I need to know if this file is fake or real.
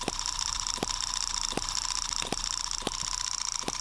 real